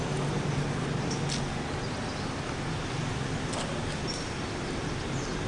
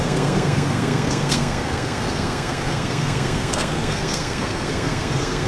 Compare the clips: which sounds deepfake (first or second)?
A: second